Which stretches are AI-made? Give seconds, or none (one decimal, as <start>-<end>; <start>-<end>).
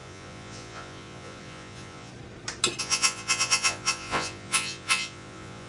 0.0-2.1; 2.8-5.7